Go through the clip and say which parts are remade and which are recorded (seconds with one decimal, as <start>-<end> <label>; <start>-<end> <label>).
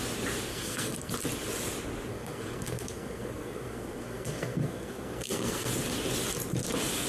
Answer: 0.0-0.5 recorded; 0.5-1.1 remade; 1.1-2.1 recorded; 2.1-5.7 remade; 5.7-7.1 recorded